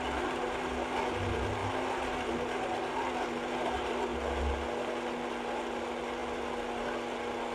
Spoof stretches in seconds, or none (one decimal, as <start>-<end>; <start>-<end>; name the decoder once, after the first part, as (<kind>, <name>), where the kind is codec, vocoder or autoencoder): none